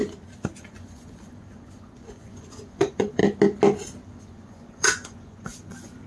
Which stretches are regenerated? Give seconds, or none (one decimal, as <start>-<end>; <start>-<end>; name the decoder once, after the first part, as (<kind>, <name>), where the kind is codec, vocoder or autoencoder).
0.6-3.2 (vocoder, Vocos); 4.2-6.1